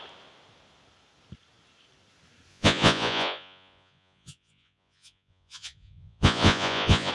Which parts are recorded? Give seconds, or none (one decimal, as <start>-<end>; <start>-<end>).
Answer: 0.0-2.5